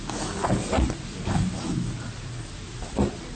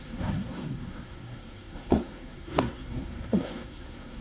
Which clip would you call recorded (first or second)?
first